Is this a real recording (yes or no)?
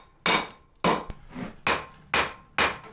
yes